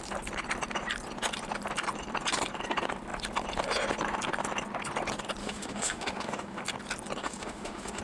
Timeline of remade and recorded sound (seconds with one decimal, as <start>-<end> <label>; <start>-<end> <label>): 0.0-5.4 recorded; 5.4-6.6 remade; 6.6-7.2 recorded; 7.2-8.0 remade